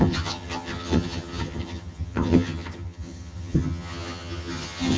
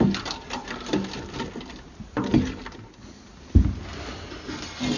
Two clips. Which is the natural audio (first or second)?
second